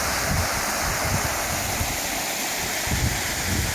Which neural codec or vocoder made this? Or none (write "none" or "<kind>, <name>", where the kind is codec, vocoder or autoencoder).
none